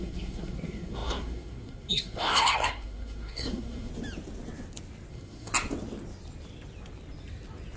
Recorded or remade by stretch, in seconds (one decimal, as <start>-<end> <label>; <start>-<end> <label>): 0.0-3.9 remade; 3.9-5.1 recorded; 5.1-5.5 remade; 5.5-7.8 recorded

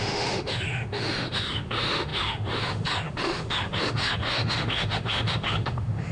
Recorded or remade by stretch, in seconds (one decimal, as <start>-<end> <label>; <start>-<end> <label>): 0.0-6.1 remade

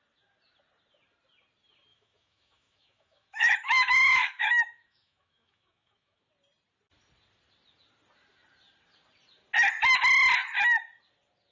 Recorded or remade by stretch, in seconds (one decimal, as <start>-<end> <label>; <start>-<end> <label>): 0.0-1.9 recorded; 1.9-6.2 remade; 6.2-11.5 recorded

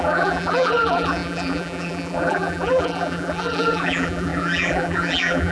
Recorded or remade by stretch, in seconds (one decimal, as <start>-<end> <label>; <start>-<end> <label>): 0.0-5.5 remade